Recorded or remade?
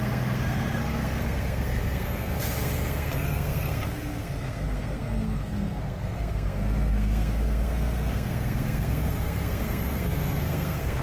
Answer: remade